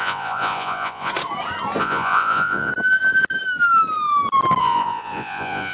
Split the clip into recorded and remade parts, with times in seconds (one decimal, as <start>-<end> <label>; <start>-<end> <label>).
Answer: 0.0-1.1 remade; 1.1-1.8 recorded; 1.8-2.7 remade; 2.7-4.6 recorded; 4.6-5.7 remade